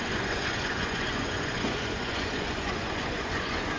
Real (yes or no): no